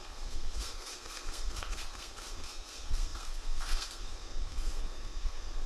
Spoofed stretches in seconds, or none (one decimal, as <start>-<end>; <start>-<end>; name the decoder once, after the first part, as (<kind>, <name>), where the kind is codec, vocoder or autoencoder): 0.0-5.7 (codec, SNAC)